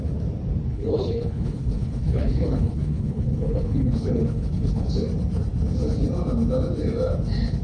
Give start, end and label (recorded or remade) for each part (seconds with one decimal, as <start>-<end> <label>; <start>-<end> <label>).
0.0-0.7 recorded; 0.7-4.9 remade; 4.9-7.6 recorded